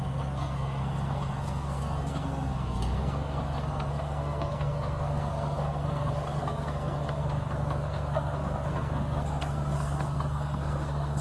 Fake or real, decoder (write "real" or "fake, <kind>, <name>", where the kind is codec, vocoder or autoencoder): fake, codec, SNAC